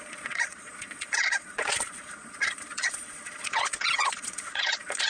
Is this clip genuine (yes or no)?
no